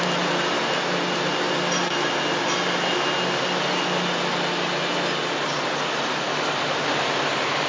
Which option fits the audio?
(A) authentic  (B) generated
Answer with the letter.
A